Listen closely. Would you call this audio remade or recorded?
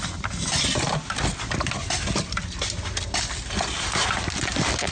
recorded